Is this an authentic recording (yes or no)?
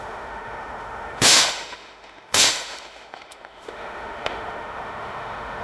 no